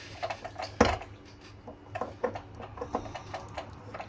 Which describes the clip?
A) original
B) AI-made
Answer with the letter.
A